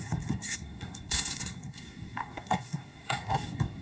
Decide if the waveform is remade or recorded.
remade